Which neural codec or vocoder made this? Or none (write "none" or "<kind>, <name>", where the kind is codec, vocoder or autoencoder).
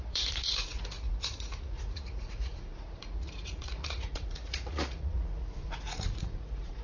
vocoder, Vocos